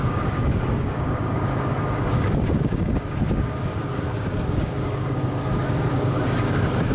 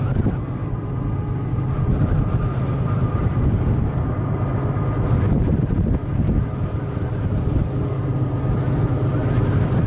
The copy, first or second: first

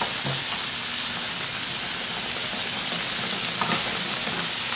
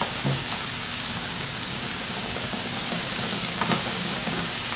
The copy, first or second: second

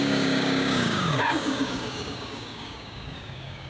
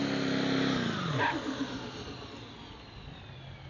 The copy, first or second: first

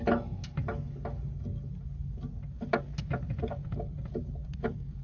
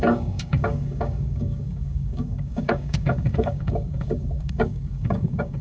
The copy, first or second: second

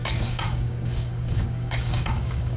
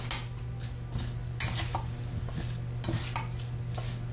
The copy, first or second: first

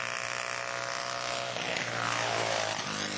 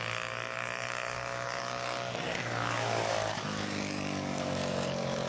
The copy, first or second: second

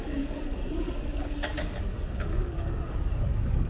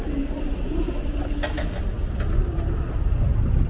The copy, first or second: first